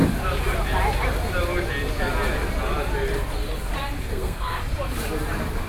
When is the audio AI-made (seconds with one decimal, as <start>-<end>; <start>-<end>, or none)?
4.1-4.6